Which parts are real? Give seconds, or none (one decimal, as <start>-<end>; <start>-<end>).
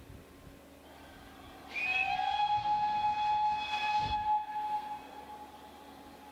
0.0-2.4; 5.2-6.3